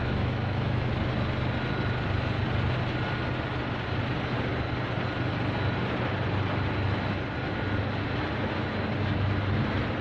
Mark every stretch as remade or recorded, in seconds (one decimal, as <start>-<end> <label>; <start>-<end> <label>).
0.0-0.9 remade; 0.9-10.0 recorded